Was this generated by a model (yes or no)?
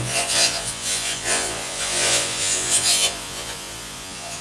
yes